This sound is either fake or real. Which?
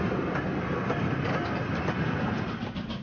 real